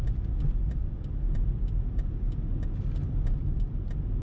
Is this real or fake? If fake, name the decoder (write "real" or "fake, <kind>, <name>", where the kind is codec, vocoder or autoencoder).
real